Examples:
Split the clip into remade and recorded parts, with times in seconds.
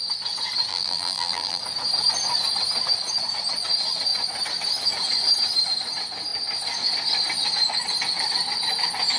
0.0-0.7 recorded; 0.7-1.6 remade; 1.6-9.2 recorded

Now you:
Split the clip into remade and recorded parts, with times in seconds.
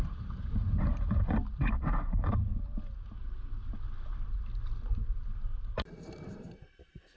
0.0-2.5 remade; 2.5-5.9 recorded; 5.9-7.2 remade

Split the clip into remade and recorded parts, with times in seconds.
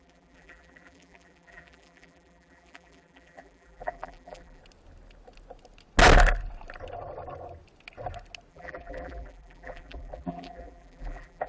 0.0-4.6 remade; 4.6-8.5 recorded; 8.5-11.5 remade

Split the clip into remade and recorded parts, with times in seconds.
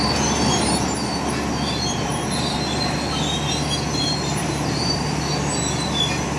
0.0-0.5 recorded; 0.5-1.1 remade; 1.1-4.3 recorded; 4.3-5.2 remade; 5.2-6.4 recorded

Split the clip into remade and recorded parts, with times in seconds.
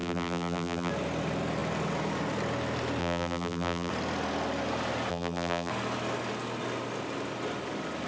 0.0-0.9 remade; 0.9-3.0 recorded; 3.0-3.9 remade; 3.9-5.1 recorded; 5.1-5.7 remade; 5.7-8.1 recorded